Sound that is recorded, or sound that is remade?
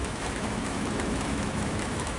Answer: remade